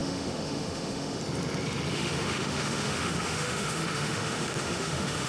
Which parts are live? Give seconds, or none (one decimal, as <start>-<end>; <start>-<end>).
1.2-1.9